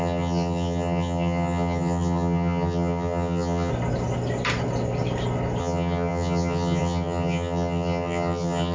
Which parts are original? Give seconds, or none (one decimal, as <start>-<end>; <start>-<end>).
3.7-5.6